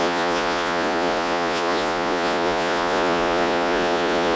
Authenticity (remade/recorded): remade